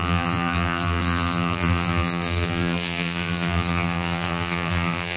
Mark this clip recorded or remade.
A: remade